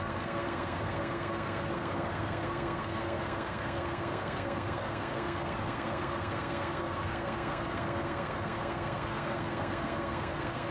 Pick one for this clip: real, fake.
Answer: fake